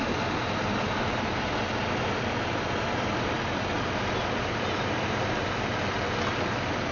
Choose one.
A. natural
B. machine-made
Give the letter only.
A